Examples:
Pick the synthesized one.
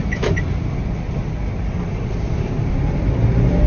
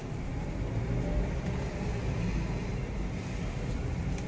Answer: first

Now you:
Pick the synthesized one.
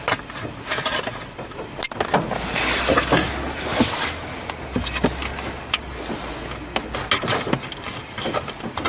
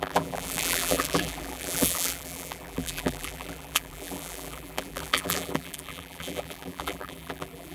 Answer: second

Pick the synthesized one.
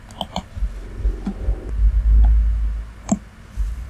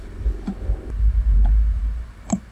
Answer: second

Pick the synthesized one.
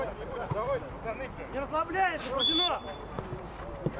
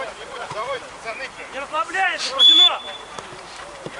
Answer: second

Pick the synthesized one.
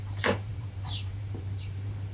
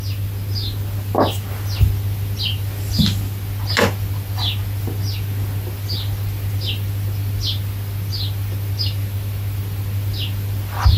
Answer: first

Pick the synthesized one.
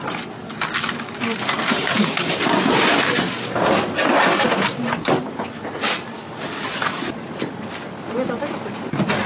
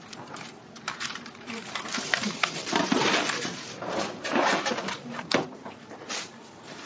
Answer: second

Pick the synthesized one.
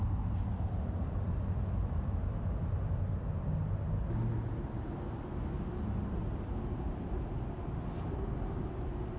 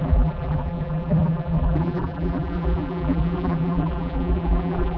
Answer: second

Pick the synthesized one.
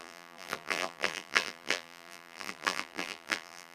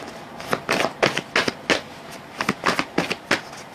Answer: first